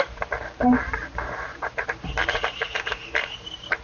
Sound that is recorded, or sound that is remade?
remade